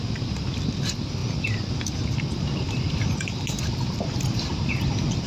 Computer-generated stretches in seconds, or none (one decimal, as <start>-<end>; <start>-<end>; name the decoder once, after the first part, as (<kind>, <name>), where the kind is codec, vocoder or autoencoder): none